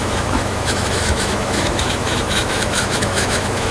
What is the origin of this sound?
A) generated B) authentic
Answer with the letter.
A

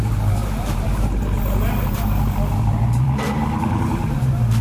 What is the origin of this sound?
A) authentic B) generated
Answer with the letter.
B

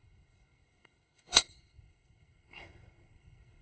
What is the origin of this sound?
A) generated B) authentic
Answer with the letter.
A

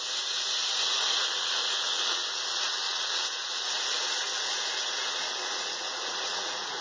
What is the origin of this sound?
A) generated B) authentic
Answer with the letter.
A